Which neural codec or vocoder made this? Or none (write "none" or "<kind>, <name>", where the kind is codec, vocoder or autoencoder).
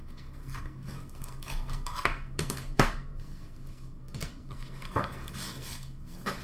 codec, SNAC